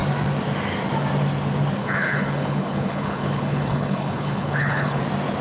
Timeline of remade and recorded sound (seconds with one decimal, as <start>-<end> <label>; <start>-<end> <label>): 0.0-1.8 recorded; 1.8-5.0 remade; 5.0-5.4 recorded